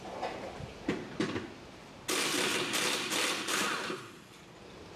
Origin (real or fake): real